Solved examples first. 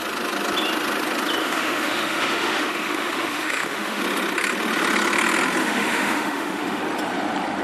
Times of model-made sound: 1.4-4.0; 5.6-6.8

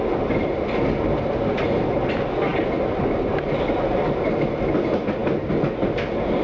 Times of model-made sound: none

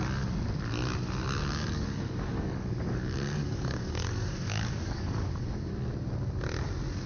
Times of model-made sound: 1.4-5.7

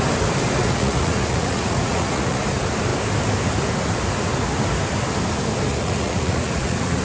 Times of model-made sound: 0.6-2.4; 5.7-7.0

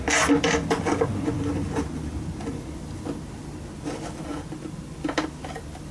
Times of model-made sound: none

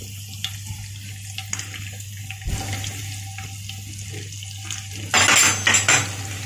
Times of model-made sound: none

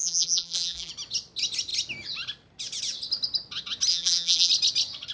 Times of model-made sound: 0.0-0.9; 3.9-4.5

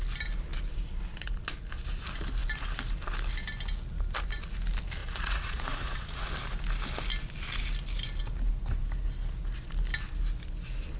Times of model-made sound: 5.0-6.3